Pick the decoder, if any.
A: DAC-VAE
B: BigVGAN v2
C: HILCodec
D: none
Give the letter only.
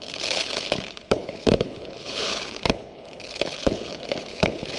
C